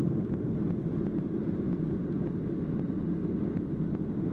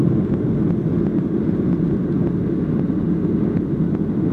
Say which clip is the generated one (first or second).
first